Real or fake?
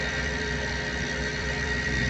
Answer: fake